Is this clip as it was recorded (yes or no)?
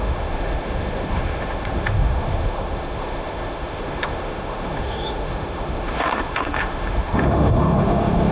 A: no